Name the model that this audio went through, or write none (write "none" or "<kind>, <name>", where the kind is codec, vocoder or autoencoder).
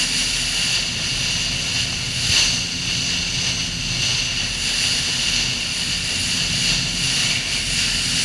none